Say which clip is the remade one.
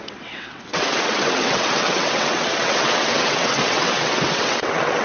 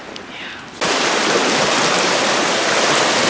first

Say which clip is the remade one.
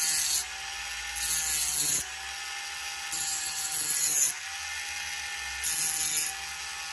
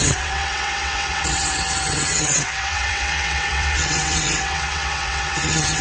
second